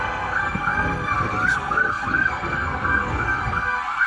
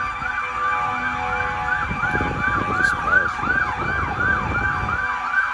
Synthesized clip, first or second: first